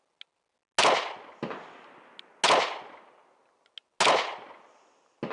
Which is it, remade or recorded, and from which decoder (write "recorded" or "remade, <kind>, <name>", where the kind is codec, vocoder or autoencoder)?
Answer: recorded